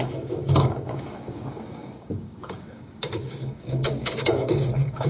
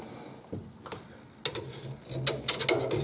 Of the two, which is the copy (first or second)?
first